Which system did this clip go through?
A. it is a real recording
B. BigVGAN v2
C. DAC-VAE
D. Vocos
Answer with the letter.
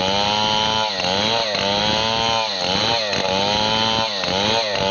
A